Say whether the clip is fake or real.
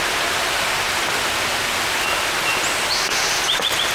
real